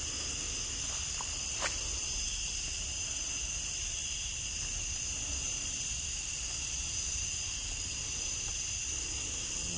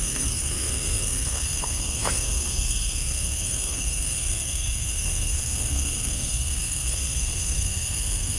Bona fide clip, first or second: first